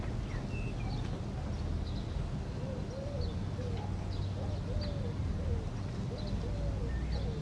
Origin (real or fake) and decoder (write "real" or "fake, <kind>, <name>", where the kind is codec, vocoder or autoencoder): real